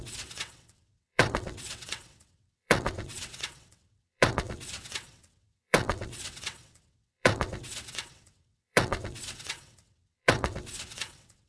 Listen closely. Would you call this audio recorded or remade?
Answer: remade